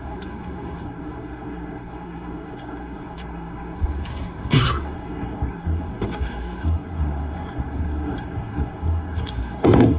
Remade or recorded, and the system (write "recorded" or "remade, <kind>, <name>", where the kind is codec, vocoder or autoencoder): remade, codec, SNAC